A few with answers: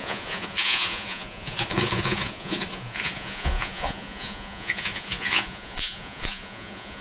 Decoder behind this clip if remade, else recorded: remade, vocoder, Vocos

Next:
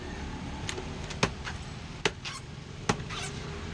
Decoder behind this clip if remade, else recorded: recorded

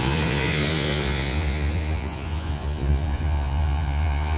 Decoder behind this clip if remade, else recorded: remade, vocoder, Vocos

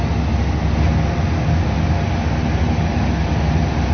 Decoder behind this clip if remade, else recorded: recorded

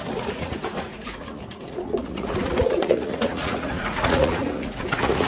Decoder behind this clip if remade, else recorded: remade, vocoder, Vocos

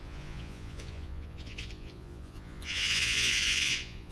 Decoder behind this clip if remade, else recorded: remade, vocoder, Vocos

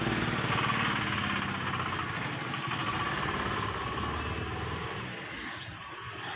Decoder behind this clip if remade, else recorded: recorded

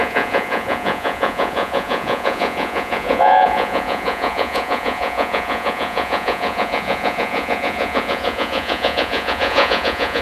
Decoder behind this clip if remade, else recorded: remade, vocoder, Vocos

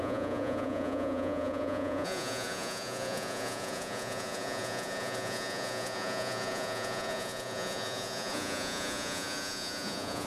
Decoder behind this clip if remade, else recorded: remade, vocoder, Vocos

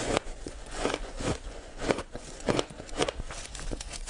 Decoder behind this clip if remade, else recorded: remade, vocoder, Vocos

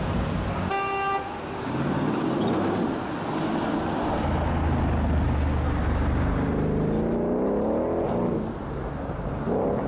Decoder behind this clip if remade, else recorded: recorded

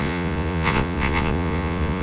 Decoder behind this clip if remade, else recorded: remade, vocoder, Vocos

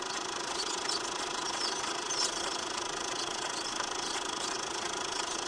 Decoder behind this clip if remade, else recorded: remade, vocoder, Vocos